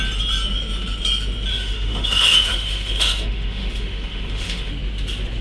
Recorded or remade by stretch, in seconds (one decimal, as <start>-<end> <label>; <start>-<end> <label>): 0.0-1.5 recorded; 1.5-4.7 remade; 4.7-5.4 recorded